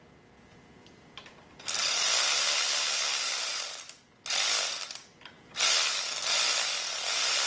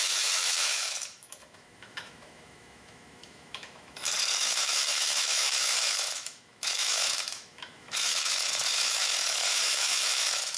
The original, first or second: first